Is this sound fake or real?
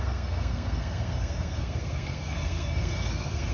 fake